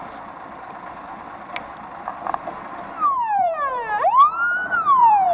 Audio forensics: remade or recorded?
remade